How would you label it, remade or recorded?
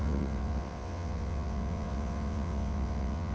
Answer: remade